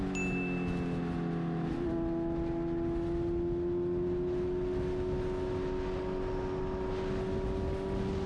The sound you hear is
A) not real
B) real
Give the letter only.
B